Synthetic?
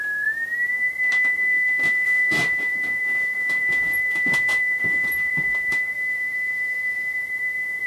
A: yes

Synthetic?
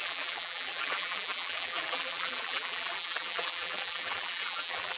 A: yes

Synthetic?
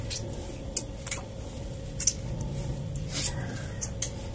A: no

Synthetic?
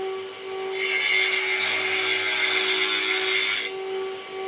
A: no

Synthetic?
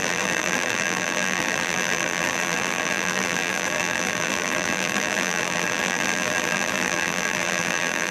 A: yes